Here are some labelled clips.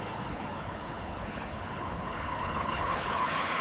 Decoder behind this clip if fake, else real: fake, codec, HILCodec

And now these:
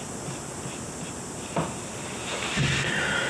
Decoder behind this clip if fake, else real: real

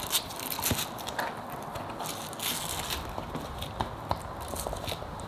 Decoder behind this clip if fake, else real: real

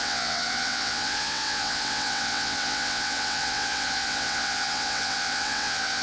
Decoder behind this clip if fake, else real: fake, vocoder, WaveNeXt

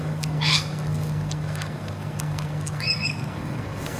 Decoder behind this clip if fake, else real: fake, codec, SNAC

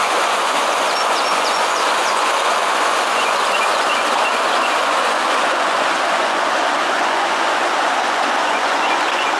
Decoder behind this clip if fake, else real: fake, vocoder, Vocos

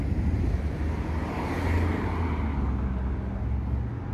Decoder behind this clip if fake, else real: real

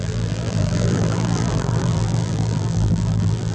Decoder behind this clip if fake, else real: fake, vocoder, BigVGAN v2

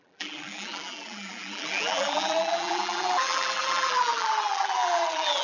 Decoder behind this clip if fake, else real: fake, vocoder, BigVGAN v2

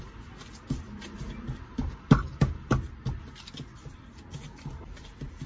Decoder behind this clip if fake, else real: real